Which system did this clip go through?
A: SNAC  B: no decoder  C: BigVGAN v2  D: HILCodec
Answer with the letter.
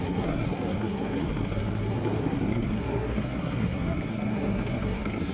A